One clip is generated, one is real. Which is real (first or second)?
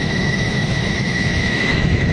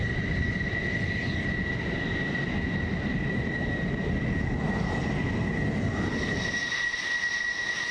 second